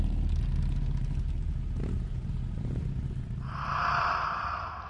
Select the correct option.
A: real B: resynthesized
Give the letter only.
A